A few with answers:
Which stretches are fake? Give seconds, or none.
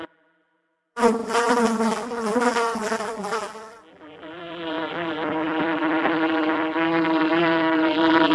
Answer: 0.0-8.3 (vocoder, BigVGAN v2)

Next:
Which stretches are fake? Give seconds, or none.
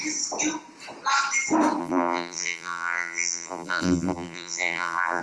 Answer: 1.8-5.2 (vocoder, BigVGAN v2)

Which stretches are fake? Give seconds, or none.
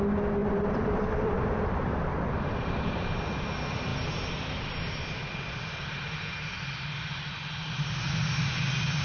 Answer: 0.4-3.2 (vocoder, BigVGAN v2)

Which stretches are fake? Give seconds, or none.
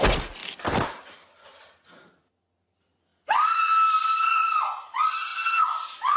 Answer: 0.4-1.7 (vocoder, BigVGAN v2); 3.1-3.6; 5.3-6.2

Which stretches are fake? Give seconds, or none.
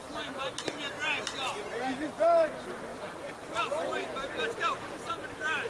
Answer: 0.0-5.7 (vocoder, BigVGAN v2)